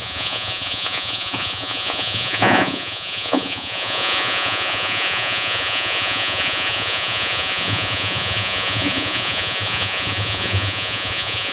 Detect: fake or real fake